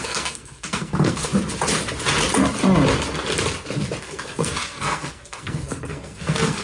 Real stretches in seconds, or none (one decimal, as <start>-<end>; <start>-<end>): 1.3-4.0